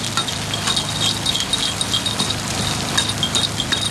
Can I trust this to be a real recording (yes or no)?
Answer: yes